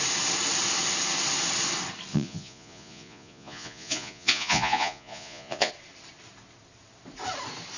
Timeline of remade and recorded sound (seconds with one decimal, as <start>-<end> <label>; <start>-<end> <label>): 0.0-2.1 recorded; 2.1-5.7 remade; 5.7-7.8 recorded